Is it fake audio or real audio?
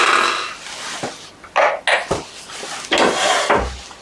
real